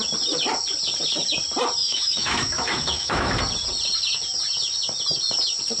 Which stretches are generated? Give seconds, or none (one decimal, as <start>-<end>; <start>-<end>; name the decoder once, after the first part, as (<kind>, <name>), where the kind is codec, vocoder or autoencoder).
1.8-3.4 (autoencoder, DAC-VAE)

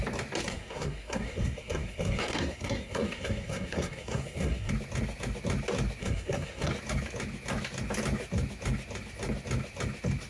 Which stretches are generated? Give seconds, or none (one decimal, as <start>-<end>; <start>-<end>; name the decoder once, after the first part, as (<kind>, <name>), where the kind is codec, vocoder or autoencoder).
0.5-4.7 (codec, SNAC); 6.0-6.7

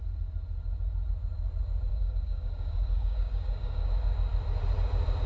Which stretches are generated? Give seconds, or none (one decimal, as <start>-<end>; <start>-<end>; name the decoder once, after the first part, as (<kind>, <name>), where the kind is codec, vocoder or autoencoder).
1.9-3.9 (codec, DAC)

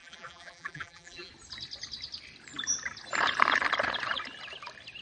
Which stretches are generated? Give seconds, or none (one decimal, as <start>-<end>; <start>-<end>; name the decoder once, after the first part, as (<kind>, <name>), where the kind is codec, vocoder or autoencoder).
0.0-1.3 (vocoder, BigVGAN v2)

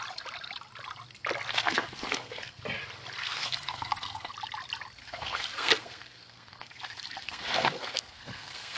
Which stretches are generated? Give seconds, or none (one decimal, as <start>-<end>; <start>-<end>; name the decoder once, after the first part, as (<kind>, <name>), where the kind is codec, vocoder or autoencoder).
1.5-2.6 (codec, SNAC); 3.2-4.3; 5.0-8.8